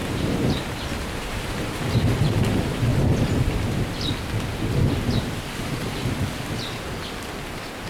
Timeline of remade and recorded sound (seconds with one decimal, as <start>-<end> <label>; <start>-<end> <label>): 0.0-1.8 remade; 1.8-7.9 recorded